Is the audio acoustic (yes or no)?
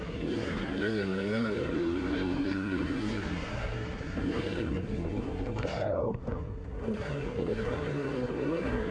no